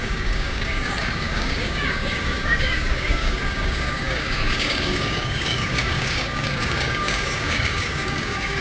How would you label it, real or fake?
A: fake